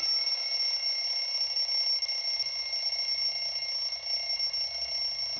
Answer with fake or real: real